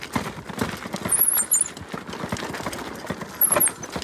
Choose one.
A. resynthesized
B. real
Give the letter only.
B